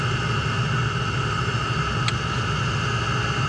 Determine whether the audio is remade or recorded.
recorded